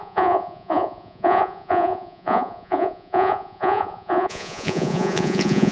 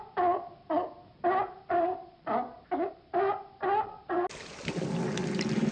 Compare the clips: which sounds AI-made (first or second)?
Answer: first